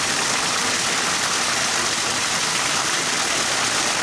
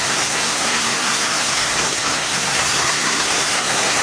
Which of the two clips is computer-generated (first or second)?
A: second